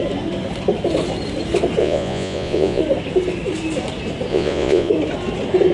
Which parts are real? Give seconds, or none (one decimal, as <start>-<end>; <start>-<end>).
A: 0.0-1.8; 2.8-4.3; 4.9-5.7